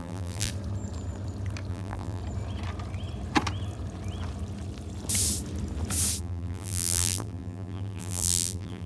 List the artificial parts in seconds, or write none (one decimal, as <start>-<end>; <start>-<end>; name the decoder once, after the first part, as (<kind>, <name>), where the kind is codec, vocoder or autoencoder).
0.0-0.5 (vocoder, BigVGAN v2); 1.7-2.2; 6.2-8.9